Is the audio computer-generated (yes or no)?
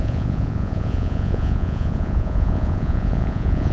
yes